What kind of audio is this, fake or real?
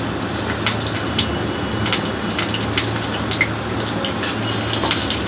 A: real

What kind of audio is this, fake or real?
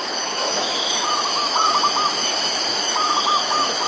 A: fake